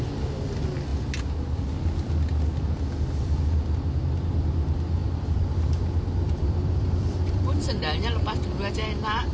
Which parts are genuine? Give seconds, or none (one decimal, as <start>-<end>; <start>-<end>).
0.0-5.0; 8.7-9.3